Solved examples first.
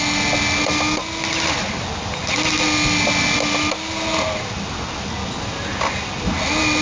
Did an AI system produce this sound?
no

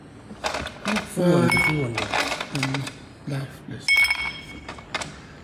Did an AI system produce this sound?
no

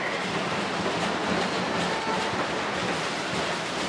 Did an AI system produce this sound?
no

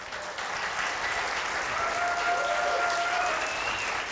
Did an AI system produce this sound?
no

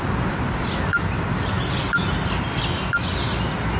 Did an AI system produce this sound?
no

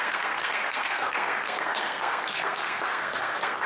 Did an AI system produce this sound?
yes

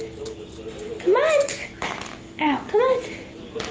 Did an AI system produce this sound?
no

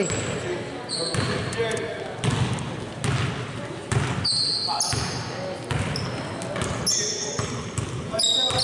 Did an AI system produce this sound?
no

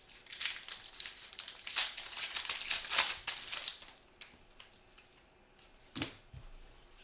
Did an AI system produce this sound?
no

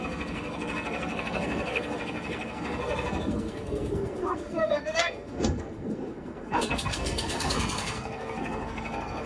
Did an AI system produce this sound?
yes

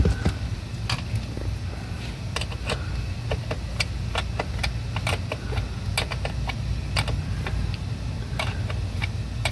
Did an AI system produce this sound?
no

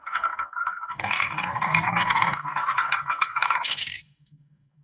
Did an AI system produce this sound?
yes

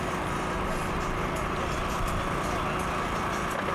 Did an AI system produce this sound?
no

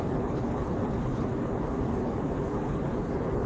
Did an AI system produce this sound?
yes